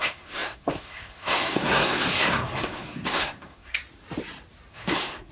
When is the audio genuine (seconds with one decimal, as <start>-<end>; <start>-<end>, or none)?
3.8-4.7